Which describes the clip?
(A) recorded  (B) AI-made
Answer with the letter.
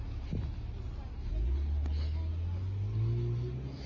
A